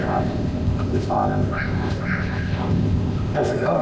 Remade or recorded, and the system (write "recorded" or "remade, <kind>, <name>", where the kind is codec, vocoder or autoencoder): remade, codec, ZipCodec